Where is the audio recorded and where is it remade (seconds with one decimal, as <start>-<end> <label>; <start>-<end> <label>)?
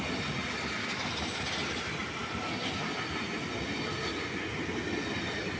0.0-5.6 recorded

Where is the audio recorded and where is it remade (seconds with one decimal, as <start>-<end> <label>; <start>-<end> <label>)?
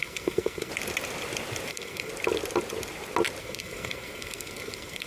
0.0-0.7 remade; 0.7-1.7 recorded; 1.7-2.1 remade; 2.1-3.4 recorded; 3.4-5.1 remade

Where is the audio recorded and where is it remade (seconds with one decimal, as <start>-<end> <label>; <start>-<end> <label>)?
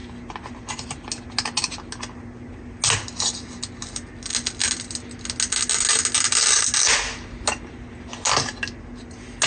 0.0-9.5 recorded